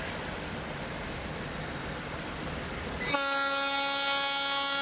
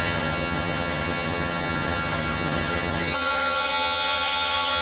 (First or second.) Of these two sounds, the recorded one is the first